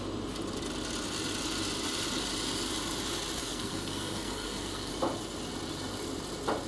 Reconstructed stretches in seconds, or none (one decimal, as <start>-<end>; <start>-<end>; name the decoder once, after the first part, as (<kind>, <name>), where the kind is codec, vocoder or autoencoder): 3.4-4.9 (codec, SNAC)